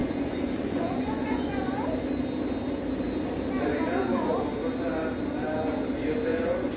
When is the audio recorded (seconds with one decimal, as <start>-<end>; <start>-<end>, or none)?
1.6-6.3